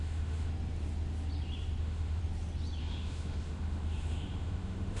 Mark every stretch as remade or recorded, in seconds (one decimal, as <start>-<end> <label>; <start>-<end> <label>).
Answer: 0.0-0.5 remade; 0.5-1.8 recorded; 1.8-2.2 remade; 2.2-2.8 recorded; 2.8-5.0 remade